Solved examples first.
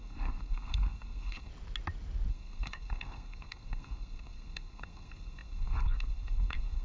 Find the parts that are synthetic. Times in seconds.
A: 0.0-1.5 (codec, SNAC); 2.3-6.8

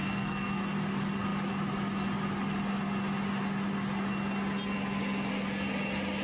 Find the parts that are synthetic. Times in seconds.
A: 0.0-0.6 (codec, SNAC)

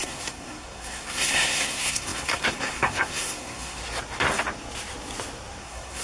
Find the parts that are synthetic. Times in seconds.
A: 0.0-3.8 (codec, SNAC); 5.6-6.0

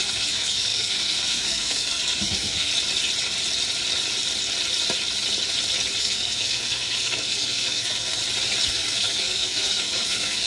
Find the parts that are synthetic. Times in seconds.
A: 0.0-2.7 (codec, SNAC); 6.0-8.2; 8.7-10.5

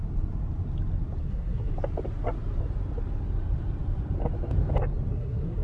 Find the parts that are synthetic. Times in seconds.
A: 1.2-1.7 (codec, SNAC); 5.1-5.6

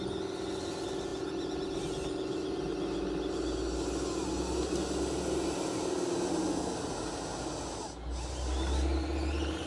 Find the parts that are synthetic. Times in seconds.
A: none